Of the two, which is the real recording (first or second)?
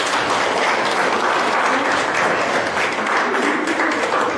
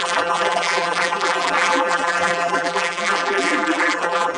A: first